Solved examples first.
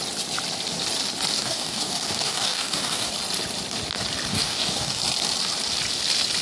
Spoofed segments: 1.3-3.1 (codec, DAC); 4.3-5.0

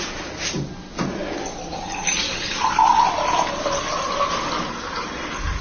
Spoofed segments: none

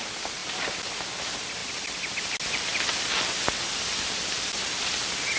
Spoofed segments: none

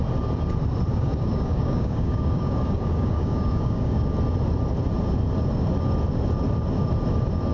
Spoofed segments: 0.9-4.0 (codec, DAC)

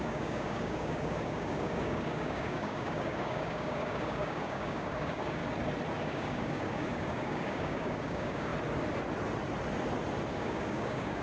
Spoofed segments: 0.0-5.4 (codec, DAC); 6.0-8.5; 10.3-11.2

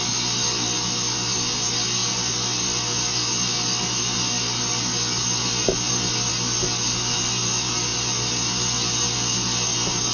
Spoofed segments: none

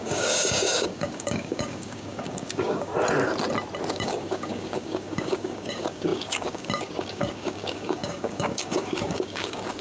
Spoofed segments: 0.0-2.9 (codec, DAC); 3.9-9.8

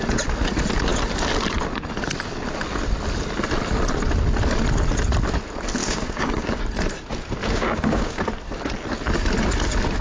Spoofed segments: 5.8-6.6 (codec, DAC); 7.4-8.2